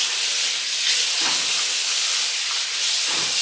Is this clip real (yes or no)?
yes